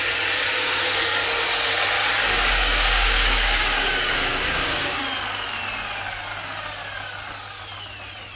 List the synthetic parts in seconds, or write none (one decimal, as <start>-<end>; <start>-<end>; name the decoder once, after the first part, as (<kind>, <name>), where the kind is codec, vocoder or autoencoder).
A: 2.0-5.0 (codec, DAC)